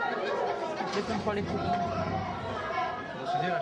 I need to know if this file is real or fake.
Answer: real